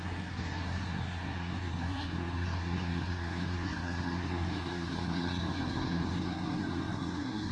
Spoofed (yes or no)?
yes